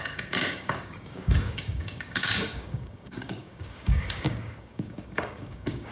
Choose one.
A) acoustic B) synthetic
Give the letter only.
B